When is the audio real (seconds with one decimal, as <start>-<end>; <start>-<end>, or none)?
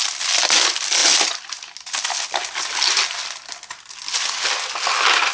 0.0-5.3